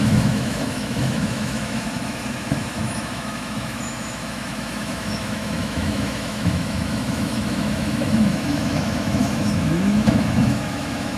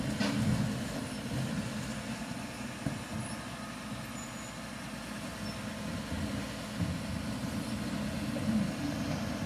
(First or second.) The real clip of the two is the second